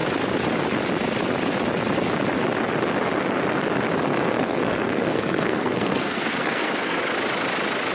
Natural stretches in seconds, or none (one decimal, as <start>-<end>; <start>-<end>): 0.0-4.1; 7.0-7.9